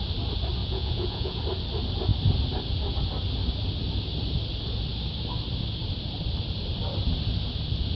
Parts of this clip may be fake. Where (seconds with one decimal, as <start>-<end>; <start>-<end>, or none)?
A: 0.6-1.4